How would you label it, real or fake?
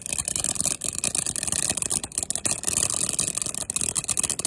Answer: real